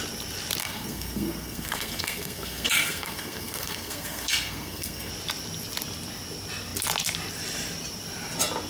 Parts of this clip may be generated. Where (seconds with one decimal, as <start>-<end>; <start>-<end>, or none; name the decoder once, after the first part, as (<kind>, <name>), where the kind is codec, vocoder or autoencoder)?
0.6-5.1 (codec, SNAC)